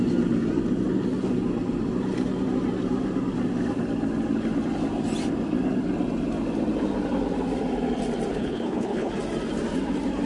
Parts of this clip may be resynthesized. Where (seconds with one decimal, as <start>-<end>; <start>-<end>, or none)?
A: 8.3-9.1